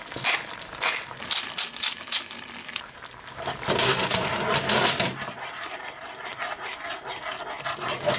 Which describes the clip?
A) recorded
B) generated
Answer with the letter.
A